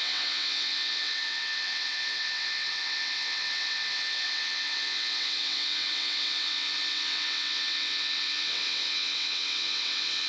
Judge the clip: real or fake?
fake